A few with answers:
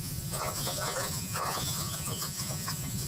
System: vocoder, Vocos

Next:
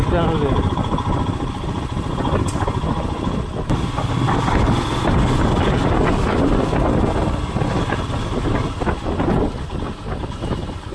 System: none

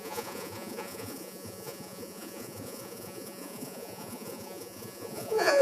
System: vocoder, Vocos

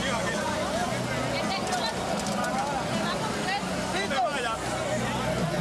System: none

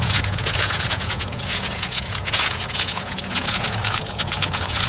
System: vocoder, Vocos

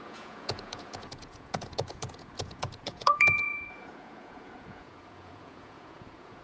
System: vocoder, Vocos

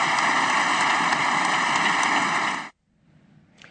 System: none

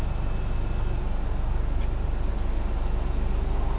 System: none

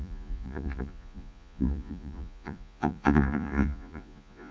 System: vocoder, Vocos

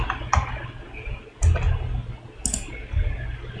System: none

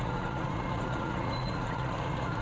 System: vocoder, Vocos